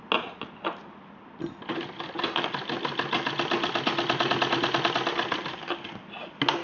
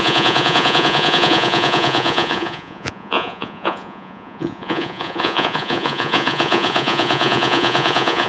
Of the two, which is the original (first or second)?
first